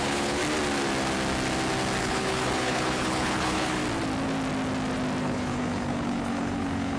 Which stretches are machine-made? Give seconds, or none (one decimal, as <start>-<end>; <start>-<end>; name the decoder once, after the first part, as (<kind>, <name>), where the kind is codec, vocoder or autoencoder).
0.0-0.4 (codec, HILCodec); 2.0-3.8; 5.2-7.0